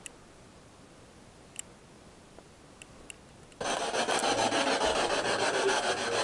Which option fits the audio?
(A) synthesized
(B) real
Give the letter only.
B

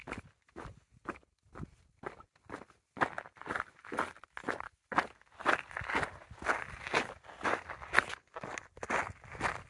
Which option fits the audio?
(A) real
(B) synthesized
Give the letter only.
A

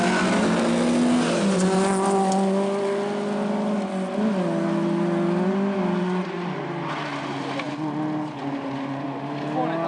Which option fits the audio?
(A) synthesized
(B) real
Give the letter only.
B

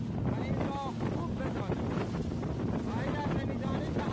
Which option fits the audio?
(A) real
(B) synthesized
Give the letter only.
A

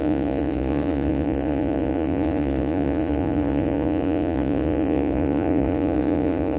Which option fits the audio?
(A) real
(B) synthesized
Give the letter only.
B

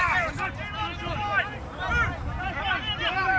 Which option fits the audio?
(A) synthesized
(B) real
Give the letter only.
B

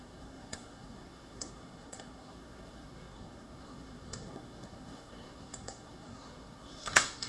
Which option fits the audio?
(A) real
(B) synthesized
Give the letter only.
B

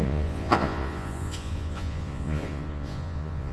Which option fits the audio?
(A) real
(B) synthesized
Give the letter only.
B